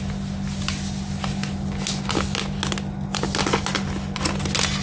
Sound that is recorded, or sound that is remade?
recorded